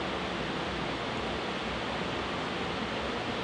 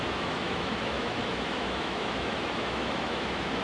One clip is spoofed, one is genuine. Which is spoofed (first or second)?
second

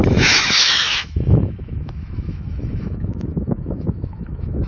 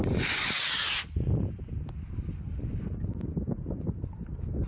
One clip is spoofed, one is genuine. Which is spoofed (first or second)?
first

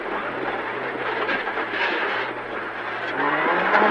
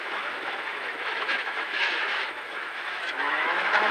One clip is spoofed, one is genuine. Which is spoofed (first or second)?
second